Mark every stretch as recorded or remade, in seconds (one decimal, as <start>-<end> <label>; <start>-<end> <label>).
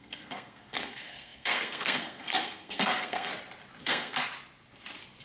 0.0-3.3 remade; 3.3-3.8 recorded; 3.8-4.2 remade; 4.2-5.2 recorded